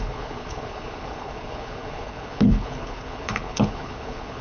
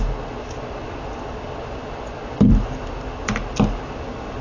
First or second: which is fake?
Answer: first